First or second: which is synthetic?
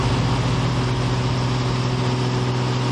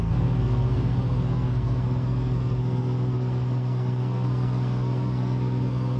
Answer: second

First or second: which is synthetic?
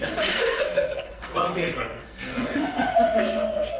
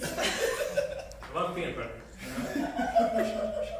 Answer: first